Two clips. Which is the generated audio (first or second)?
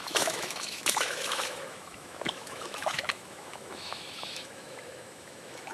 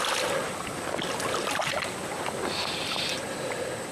first